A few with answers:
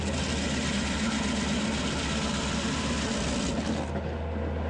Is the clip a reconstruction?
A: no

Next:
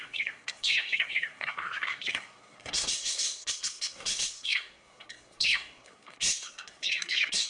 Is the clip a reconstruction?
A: yes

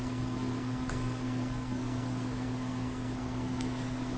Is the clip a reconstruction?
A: yes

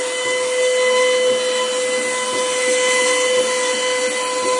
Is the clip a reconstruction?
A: no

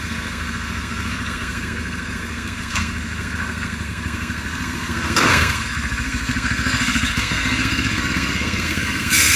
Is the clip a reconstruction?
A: yes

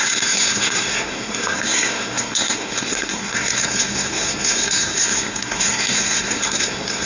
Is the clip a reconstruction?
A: yes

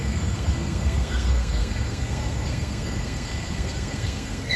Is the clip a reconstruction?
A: yes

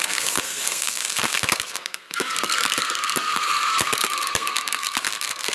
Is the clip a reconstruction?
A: yes